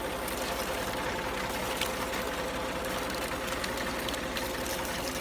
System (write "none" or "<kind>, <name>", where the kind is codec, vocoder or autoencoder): none